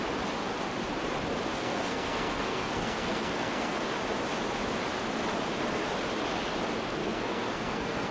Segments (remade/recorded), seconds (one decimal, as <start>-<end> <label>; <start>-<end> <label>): 0.0-1.5 recorded; 1.5-3.8 remade; 3.8-7.0 recorded; 7.0-8.1 remade